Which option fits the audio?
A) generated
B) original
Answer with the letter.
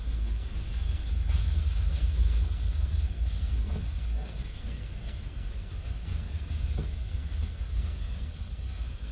A